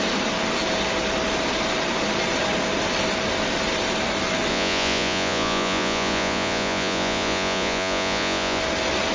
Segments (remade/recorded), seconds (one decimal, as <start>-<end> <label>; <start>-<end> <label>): 0.0-4.5 recorded; 4.5-8.6 remade; 8.6-9.1 recorded